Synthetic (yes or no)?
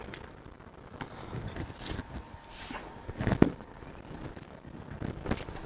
no